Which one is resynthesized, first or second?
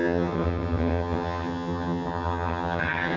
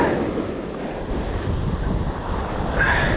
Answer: first